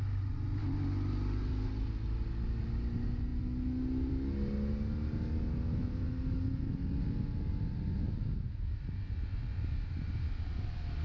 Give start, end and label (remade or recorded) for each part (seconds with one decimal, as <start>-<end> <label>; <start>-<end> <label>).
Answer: 0.0-11.0 recorded